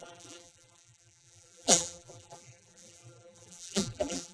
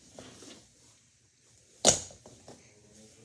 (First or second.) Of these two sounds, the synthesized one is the first